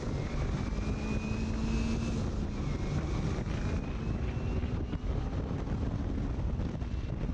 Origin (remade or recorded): recorded